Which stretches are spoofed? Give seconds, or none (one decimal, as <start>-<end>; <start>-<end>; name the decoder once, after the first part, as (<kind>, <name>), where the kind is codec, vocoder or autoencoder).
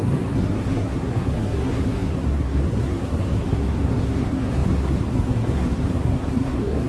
0.0-6.9 (codec, SNAC)